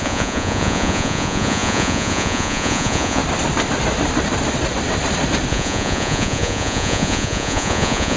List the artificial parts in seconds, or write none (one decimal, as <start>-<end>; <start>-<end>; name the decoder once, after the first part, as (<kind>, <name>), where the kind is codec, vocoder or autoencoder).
0.0-3.2 (vocoder, Vocos); 5.5-8.2